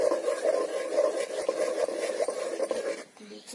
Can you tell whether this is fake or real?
real